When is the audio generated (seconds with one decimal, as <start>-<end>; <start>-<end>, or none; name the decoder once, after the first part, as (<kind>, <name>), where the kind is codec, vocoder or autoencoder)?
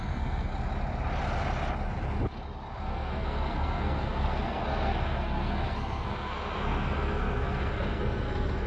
0.0-0.5 (codec, SNAC); 2.8-8.7